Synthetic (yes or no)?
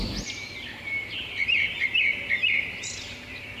yes